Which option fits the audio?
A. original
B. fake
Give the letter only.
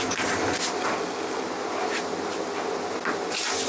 A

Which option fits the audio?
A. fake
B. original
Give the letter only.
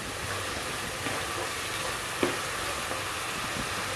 B